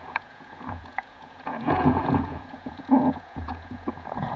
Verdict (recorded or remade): remade